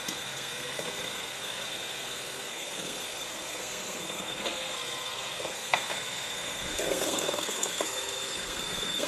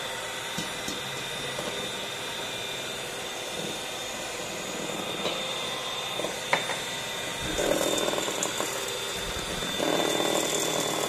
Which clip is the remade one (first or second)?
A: first